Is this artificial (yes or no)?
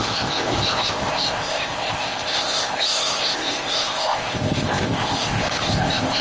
yes